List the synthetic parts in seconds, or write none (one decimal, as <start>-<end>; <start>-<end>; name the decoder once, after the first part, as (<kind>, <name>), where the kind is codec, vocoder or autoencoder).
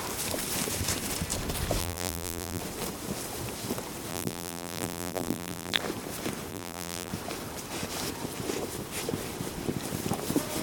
1.8-2.6 (vocoder, BigVGAN v2); 4.1-5.8; 6.5-7.1